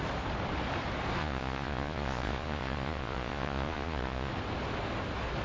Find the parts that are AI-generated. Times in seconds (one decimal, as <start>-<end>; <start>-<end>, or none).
1.2-4.3